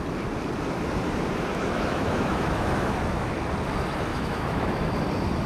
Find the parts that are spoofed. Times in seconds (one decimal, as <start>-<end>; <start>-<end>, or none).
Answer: 1.5-3.4; 4.1-4.9